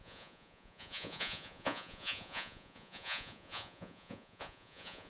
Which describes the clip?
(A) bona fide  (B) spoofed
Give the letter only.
B